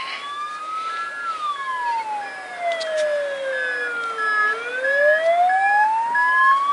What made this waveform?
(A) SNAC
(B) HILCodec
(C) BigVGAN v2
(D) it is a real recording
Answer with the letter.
D